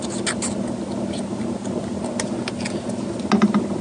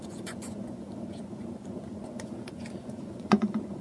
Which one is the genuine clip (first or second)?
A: first